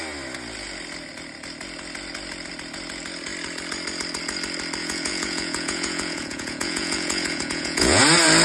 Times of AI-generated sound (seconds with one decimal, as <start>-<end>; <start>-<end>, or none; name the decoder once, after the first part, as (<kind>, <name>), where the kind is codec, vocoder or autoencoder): 4.8-8.0 (vocoder, Vocos)